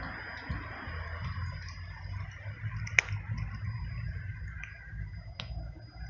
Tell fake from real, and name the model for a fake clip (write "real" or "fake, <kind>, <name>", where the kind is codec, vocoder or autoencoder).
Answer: real